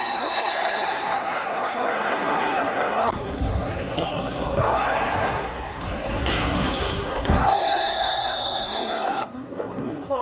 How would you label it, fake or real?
fake